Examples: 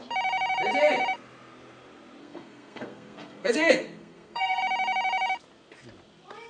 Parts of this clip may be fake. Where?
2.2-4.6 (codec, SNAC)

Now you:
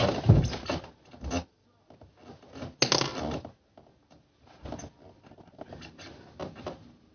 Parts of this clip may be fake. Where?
none